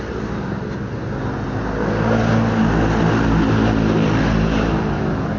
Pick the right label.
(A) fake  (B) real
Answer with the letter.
B